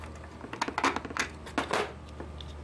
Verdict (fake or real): real